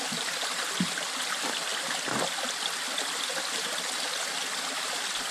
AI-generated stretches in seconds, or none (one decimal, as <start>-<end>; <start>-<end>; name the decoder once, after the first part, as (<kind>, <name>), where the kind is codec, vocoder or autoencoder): none